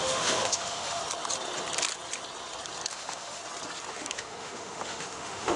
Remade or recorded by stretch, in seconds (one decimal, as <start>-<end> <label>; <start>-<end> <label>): 0.0-1.0 remade; 1.0-2.9 recorded; 2.9-3.4 remade; 3.4-3.9 recorded; 3.9-5.6 remade

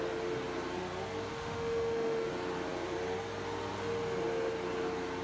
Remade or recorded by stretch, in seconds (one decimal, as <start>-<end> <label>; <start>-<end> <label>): 0.0-1.3 recorded; 1.3-2.3 remade; 2.3-5.2 recorded

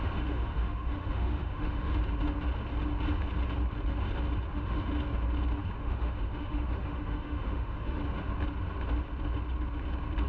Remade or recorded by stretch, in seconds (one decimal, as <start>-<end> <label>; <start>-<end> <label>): 0.0-2.0 remade; 2.0-4.5 recorded; 4.5-4.9 remade; 4.9-5.8 recorded; 5.8-8.0 remade; 8.0-10.3 recorded

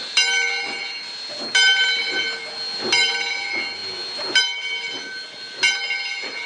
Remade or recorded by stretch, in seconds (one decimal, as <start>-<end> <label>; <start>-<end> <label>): 0.0-6.5 recorded

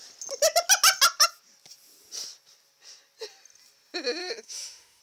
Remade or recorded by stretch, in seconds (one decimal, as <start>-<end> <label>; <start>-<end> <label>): 0.0-4.2 recorded; 4.2-5.0 remade

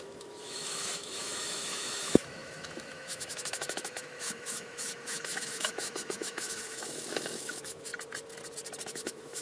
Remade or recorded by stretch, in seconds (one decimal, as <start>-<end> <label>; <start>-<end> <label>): 0.0-7.9 remade; 7.9-8.9 recorded; 8.9-9.4 remade

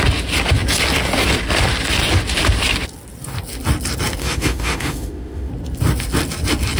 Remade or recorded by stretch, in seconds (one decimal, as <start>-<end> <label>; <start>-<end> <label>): 0.0-4.2 recorded; 4.2-5.5 remade; 5.5-6.8 recorded

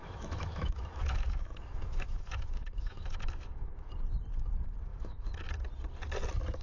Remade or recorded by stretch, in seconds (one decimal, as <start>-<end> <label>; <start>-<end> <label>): 0.0-3.9 remade; 3.9-4.9 recorded; 4.9-5.5 remade; 5.5-6.6 recorded